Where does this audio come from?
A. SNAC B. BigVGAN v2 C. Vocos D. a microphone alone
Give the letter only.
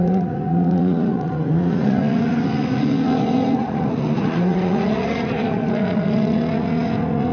C